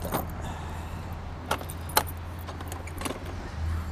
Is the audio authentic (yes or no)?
yes